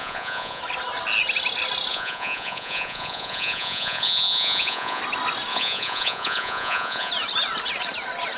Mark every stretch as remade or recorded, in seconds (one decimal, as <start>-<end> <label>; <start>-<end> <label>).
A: 0.0-0.6 remade; 0.6-1.9 recorded; 1.9-5.0 remade; 5.0-5.5 recorded; 5.5-7.1 remade; 7.1-8.4 recorded